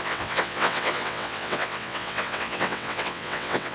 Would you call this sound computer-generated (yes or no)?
yes